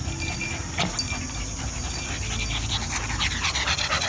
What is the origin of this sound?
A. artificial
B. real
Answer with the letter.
B